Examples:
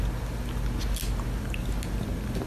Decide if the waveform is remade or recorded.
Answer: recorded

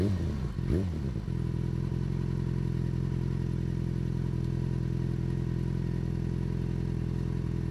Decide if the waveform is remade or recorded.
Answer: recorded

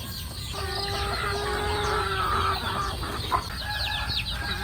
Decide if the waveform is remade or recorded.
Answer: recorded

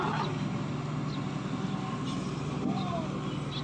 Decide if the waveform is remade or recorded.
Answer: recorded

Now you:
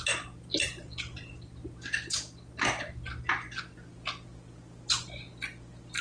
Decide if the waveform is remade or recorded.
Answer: recorded